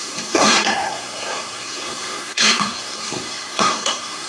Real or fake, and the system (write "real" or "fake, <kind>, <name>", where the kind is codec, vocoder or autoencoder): fake, codec, SNAC